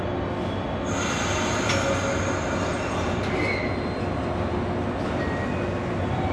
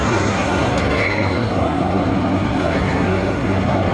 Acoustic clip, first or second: first